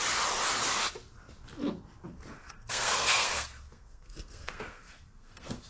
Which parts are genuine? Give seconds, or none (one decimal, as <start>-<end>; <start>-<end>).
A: 0.0-2.4